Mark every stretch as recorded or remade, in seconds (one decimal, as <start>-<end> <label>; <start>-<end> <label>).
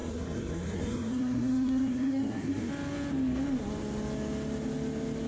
0.0-2.7 remade; 2.7-5.3 recorded